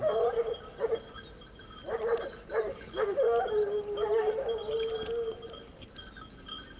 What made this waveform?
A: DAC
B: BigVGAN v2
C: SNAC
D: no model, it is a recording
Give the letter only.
D